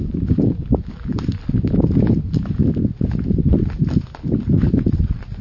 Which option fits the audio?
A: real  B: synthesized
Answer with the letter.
A